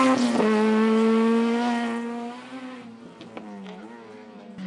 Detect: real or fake real